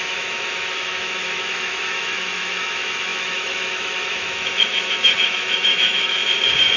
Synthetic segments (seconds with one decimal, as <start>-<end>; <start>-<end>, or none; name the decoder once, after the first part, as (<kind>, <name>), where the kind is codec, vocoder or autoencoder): 0.0-6.2 (autoencoder, DAC-VAE)